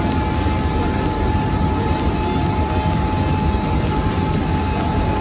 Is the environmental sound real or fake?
real